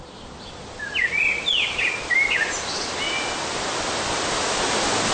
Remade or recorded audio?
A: recorded